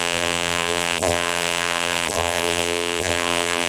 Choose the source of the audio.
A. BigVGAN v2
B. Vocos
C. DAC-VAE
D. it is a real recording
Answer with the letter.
A